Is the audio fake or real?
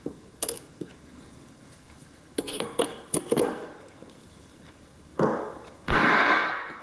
fake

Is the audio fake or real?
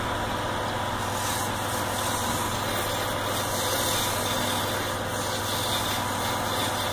real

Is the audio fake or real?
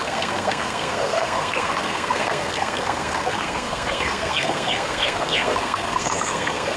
fake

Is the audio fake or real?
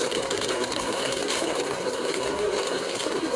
fake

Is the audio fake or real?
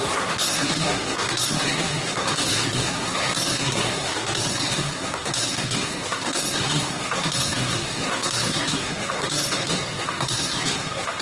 fake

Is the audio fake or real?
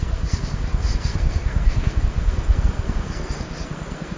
fake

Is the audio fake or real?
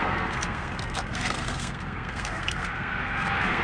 fake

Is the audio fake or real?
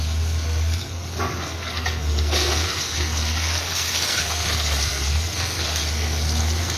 fake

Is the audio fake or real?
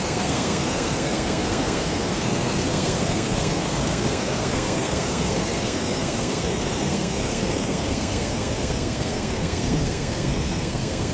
fake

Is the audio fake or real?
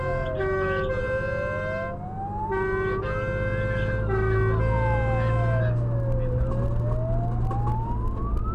real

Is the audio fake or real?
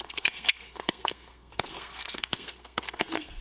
fake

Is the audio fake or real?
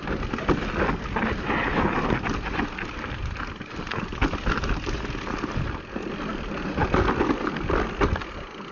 real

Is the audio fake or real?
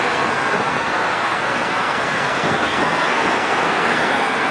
fake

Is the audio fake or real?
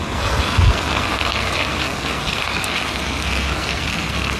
fake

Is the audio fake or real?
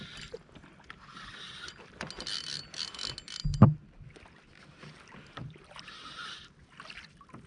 real